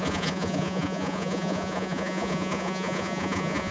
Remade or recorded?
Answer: remade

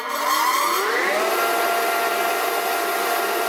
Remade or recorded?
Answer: recorded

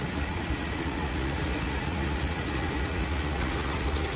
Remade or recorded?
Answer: remade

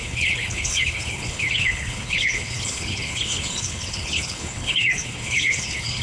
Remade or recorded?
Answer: remade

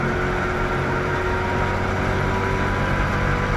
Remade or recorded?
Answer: recorded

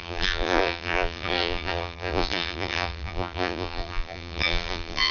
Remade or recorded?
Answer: remade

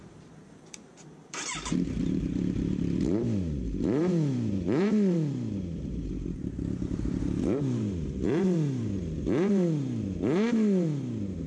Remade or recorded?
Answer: remade